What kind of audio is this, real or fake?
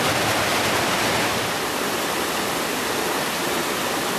fake